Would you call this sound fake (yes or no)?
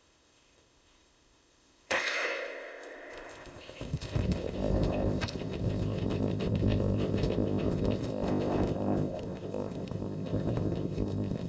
yes